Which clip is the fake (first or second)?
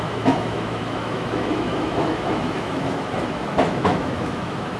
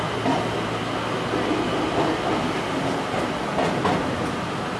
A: first